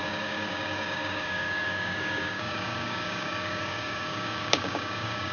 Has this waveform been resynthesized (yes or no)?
yes